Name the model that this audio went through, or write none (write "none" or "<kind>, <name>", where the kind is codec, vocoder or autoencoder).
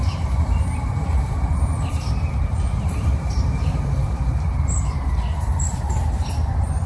vocoder, BigVGAN v2